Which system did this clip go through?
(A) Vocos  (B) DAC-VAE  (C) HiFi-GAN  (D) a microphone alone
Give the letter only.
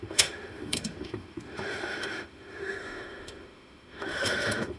B